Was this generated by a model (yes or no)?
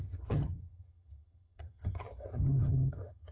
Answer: yes